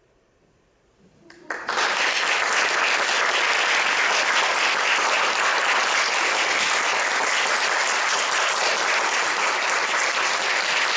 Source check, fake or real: real